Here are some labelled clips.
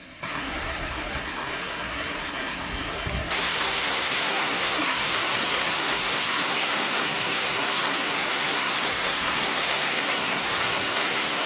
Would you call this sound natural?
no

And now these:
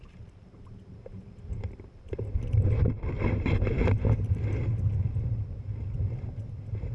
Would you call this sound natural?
no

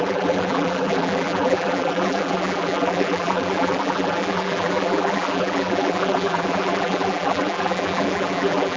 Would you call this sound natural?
no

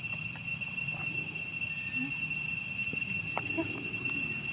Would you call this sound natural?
yes